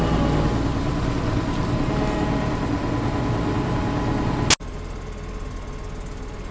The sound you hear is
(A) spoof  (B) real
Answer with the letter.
B